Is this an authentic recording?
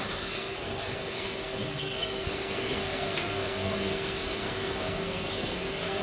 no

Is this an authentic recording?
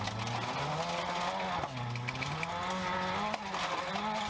yes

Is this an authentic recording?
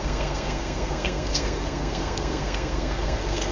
no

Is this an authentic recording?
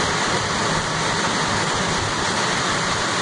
yes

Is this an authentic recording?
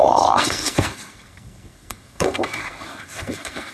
no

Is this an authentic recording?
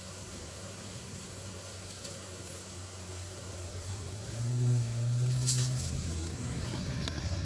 no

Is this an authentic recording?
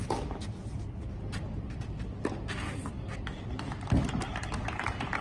yes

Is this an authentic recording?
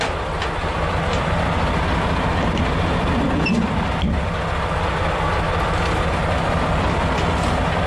yes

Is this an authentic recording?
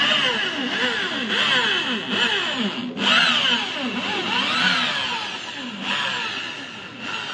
yes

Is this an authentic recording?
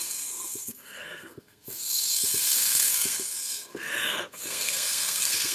no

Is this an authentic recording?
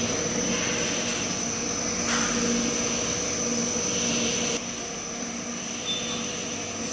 yes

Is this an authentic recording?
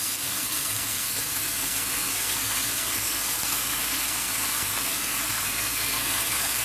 no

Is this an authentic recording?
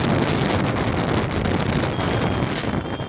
yes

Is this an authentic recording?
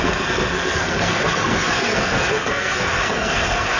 no